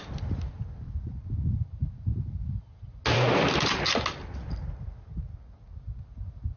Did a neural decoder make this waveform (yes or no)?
no